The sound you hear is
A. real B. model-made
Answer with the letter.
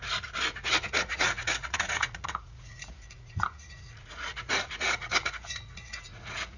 B